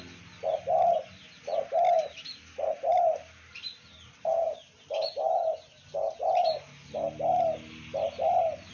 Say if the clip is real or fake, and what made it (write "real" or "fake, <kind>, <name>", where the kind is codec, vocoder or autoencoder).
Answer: real